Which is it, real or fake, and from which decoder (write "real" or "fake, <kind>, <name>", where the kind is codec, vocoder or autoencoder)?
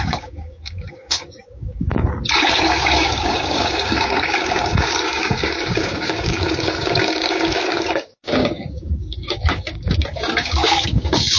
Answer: fake, codec, DAC